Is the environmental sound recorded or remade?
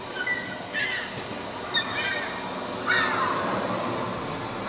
recorded